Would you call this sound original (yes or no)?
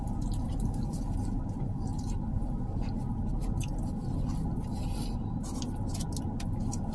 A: yes